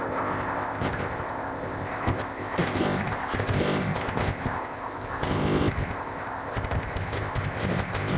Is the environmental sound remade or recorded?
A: remade